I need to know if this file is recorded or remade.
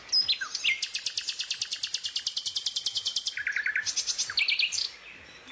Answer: recorded